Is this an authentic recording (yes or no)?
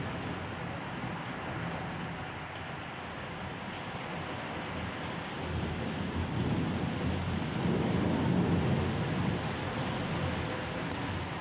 yes